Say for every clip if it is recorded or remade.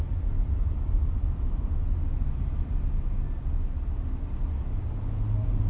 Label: recorded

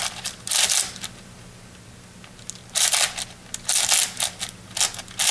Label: recorded